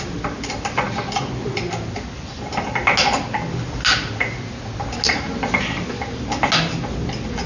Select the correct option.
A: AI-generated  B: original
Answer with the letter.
B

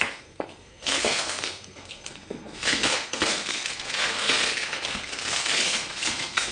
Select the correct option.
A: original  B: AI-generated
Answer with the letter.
B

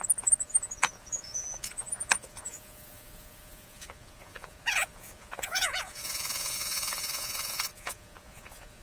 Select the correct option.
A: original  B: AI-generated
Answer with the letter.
B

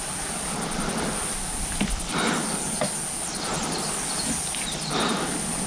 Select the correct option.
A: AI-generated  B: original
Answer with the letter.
B